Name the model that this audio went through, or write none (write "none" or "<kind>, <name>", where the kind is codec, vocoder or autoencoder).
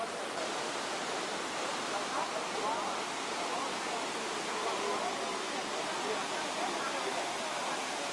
none